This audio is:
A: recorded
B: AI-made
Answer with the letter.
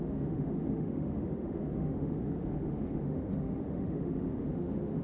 B